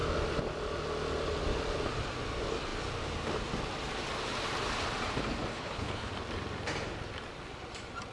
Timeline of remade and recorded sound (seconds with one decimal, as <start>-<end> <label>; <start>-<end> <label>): 0.0-5.5 recorded; 5.5-6.1 remade; 6.1-8.1 recorded